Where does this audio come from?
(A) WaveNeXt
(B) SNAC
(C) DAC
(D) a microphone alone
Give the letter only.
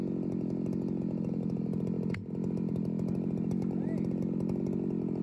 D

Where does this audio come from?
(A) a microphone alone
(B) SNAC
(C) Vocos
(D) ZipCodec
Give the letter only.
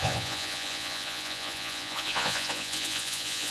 C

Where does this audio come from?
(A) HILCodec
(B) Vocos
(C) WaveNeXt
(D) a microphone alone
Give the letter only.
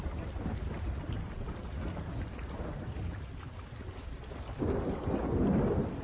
D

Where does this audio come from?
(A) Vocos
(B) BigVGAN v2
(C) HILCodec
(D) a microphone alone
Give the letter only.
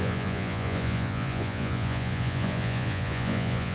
A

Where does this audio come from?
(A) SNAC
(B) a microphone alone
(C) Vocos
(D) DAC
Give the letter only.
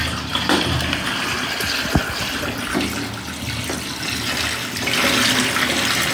B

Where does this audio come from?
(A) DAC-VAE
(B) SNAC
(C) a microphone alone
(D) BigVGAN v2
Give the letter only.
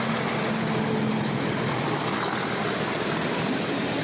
C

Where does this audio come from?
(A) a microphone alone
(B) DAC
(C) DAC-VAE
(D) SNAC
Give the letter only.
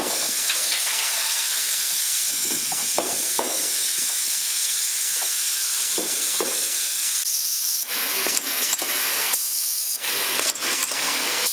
D